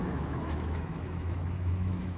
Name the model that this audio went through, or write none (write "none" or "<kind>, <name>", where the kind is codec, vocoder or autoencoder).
autoencoder, DAC-VAE